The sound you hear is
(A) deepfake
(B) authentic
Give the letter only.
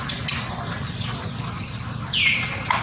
B